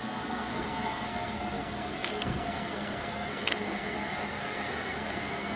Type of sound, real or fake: fake